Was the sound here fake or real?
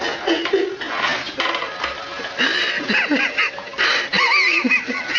real